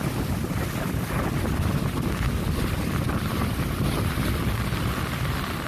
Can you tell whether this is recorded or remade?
recorded